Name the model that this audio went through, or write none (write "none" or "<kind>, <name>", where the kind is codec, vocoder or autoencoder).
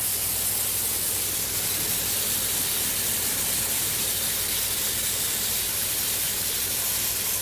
vocoder, BigVGAN v2